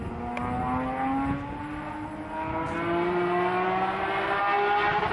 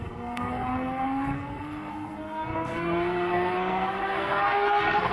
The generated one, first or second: second